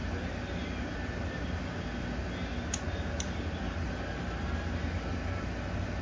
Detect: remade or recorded recorded